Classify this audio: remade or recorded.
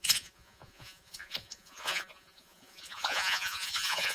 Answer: remade